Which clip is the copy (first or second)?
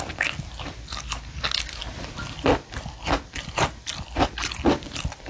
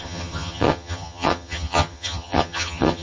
second